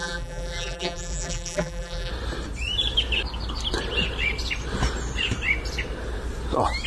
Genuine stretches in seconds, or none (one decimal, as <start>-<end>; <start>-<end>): 2.1-6.9